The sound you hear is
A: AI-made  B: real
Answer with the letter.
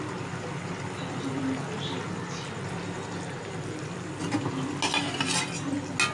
B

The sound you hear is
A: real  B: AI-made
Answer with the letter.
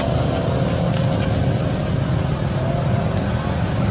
A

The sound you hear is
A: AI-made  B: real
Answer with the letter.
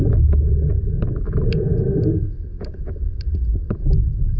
B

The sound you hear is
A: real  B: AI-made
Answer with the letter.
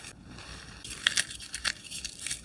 B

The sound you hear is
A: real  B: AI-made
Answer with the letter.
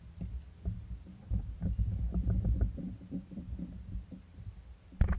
A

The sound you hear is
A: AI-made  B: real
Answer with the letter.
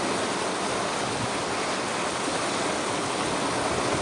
B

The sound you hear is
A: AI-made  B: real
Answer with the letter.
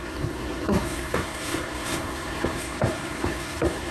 A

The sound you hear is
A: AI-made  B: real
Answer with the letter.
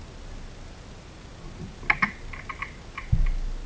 B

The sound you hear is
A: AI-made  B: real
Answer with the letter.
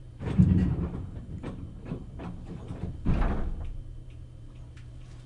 A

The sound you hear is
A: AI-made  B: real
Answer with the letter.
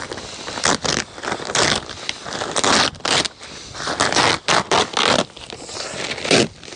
B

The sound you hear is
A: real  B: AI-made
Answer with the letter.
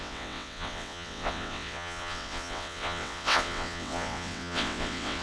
B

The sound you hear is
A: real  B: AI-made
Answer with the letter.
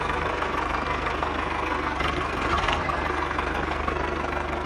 B